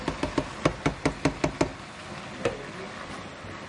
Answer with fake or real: real